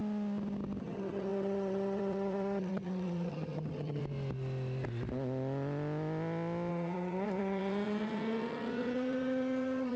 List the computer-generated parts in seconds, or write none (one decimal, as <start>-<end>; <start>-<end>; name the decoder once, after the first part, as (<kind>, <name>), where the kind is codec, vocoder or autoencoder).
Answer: 0.8-4.0 (vocoder, HiFi-GAN); 6.7-10.0